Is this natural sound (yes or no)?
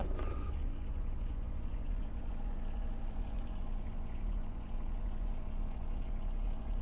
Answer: no